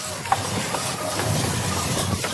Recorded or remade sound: remade